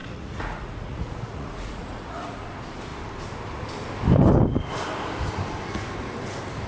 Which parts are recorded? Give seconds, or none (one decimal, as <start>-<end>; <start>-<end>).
2.4-6.7